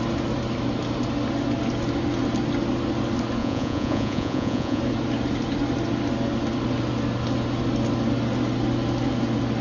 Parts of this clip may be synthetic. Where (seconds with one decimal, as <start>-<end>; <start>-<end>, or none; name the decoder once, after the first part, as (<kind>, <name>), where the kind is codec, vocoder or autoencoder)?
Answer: 3.4-4.8 (vocoder, Vocos)